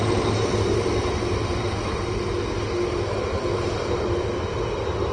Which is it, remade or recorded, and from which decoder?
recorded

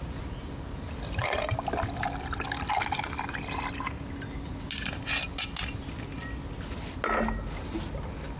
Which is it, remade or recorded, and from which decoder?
recorded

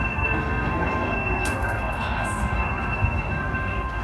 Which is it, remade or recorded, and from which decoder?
remade, codec, SNAC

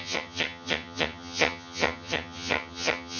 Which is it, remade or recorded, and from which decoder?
remade, vocoder, HiFi-GAN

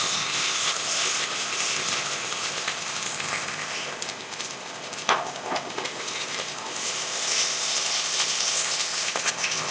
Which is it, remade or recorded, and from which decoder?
remade, codec, ZipCodec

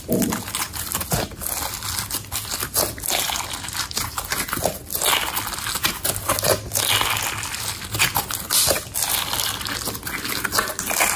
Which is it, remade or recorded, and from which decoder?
recorded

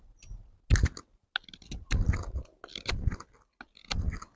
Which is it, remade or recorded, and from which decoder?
recorded